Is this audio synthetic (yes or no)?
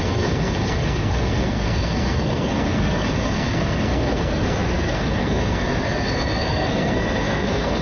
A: yes